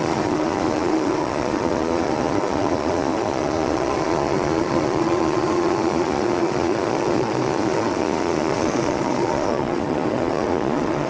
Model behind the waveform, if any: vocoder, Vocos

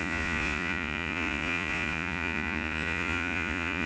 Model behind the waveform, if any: vocoder, Vocos